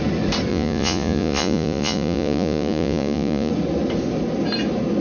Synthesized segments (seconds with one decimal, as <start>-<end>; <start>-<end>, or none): 0.5-3.5